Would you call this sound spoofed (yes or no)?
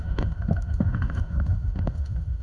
yes